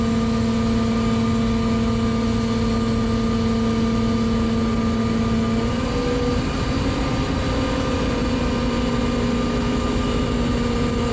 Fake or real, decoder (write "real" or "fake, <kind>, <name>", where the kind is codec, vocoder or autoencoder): real